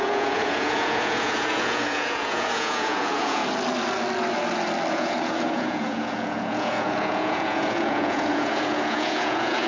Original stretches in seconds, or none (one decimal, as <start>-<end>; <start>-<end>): 3.4-4.9